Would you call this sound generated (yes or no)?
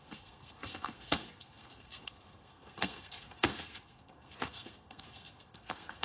yes